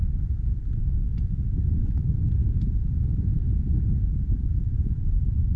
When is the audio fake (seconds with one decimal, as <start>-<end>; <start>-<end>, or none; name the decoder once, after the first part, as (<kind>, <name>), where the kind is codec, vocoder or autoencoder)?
0.0-0.8 (vocoder, BigVGAN v2); 1.7-2.1; 4.4-5.6